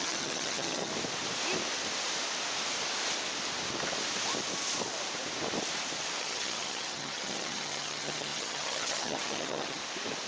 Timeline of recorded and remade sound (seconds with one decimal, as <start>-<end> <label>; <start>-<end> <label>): 0.0-0.9 remade; 0.9-6.2 recorded; 6.2-9.8 remade; 9.8-10.3 recorded